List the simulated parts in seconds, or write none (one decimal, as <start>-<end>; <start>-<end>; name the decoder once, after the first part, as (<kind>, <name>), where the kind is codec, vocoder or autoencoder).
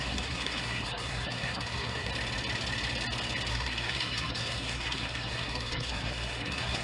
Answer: 0.0-2.1 (codec, SNAC); 3.5-6.8